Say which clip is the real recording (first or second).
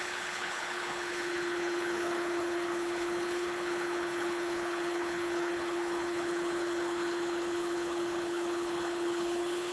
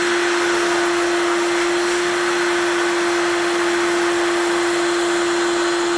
second